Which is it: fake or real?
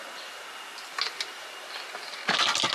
real